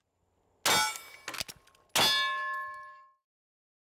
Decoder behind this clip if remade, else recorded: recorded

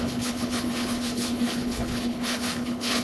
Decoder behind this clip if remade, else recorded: remade, codec, HILCodec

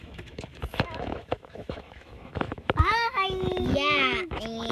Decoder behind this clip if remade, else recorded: remade, autoencoder, DAC-VAE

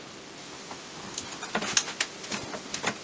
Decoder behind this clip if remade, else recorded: recorded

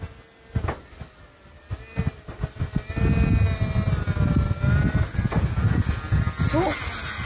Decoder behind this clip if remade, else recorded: recorded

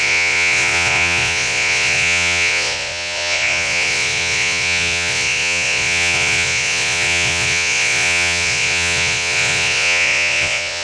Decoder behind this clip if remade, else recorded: remade, vocoder, Vocos